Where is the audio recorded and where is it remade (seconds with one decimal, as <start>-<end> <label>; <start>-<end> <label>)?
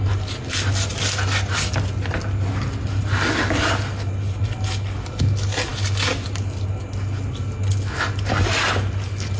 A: 0.0-9.4 recorded